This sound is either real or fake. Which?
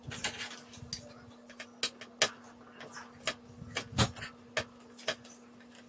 real